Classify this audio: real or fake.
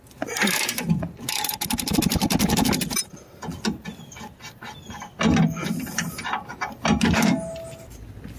real